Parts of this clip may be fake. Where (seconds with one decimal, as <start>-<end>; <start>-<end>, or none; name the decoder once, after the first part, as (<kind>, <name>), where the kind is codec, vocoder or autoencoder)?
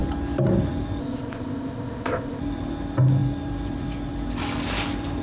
1.0-2.4 (codec, ZipCodec)